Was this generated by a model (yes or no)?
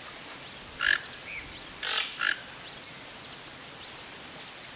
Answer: no